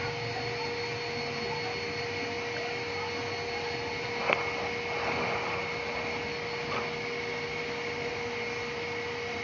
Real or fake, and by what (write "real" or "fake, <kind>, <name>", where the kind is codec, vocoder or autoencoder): real